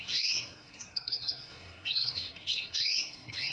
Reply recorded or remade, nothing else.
remade